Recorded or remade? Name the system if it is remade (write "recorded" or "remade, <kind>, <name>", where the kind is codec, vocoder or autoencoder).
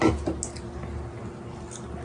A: recorded